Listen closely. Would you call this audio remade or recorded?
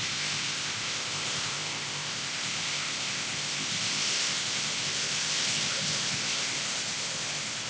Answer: remade